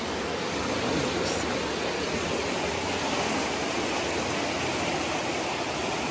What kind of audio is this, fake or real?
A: real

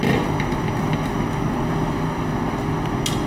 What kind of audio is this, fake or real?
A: real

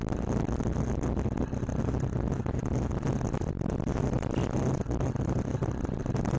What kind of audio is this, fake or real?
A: real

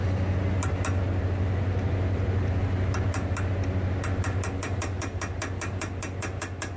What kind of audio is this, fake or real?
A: real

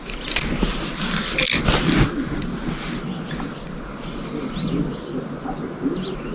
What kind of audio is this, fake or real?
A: real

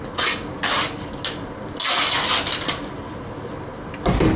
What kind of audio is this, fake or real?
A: real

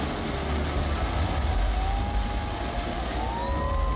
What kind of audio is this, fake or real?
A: real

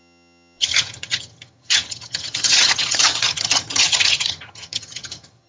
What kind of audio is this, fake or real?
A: fake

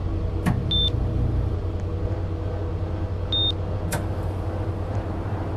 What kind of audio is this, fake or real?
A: real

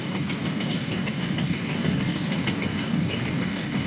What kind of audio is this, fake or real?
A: fake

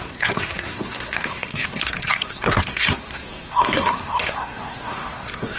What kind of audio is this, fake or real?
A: fake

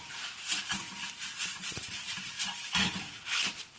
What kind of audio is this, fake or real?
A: fake